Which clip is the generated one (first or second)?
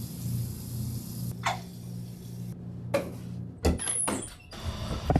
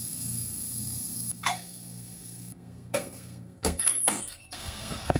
second